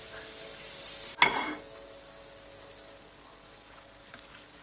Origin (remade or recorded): recorded